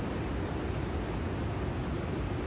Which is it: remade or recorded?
recorded